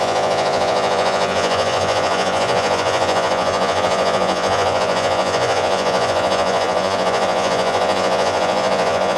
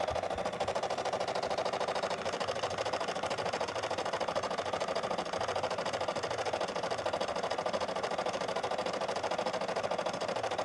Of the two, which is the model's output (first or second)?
first